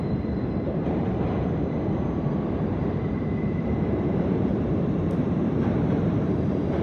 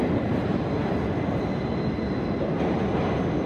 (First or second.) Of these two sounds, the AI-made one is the first